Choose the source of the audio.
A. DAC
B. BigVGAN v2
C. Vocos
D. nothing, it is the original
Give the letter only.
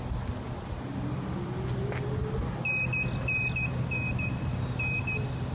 D